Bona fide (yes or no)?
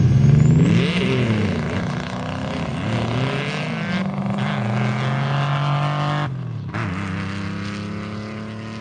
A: yes